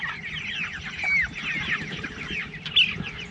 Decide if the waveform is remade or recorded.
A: recorded